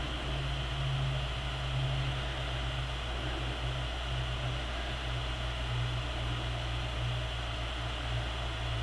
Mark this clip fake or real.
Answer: real